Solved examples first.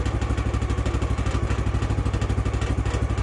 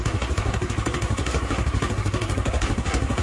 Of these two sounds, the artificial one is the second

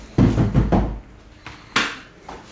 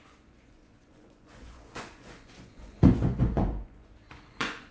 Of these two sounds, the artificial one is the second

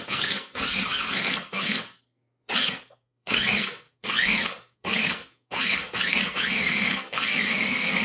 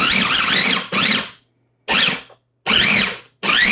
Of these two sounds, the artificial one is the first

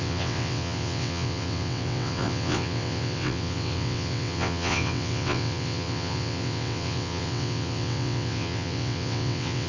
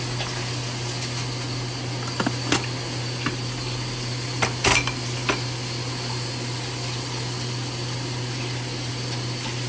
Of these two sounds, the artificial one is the first